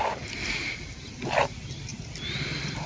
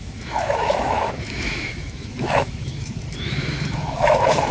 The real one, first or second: first